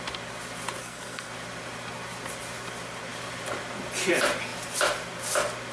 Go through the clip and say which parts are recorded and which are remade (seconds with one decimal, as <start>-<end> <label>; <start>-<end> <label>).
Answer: 0.0-0.8 recorded; 0.8-1.3 remade; 1.3-5.7 recorded